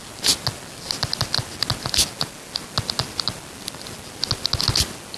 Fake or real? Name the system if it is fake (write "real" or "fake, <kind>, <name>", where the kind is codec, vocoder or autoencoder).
real